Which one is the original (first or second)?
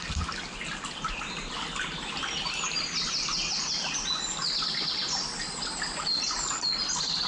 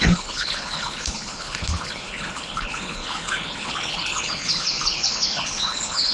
first